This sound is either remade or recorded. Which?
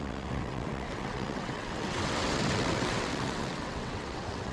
remade